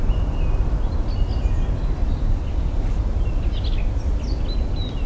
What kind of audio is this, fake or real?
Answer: real